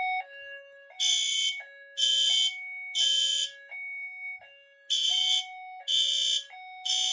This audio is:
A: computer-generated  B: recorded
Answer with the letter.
B